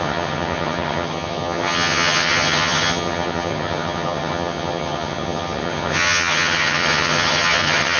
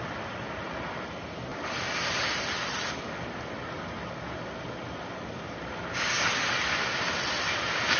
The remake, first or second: first